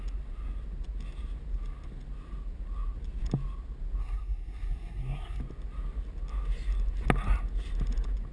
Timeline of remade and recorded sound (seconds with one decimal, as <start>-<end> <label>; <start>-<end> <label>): 0.0-4.0 recorded; 4.0-5.4 remade; 5.4-8.3 recorded